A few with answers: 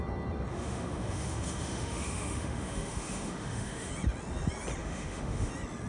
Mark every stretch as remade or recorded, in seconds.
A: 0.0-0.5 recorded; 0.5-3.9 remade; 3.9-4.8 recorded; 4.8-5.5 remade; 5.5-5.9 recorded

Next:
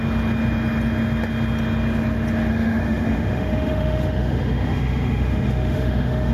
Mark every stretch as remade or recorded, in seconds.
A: 0.0-2.5 recorded; 2.5-6.3 remade